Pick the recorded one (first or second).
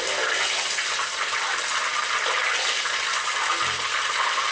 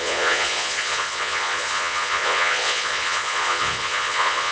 first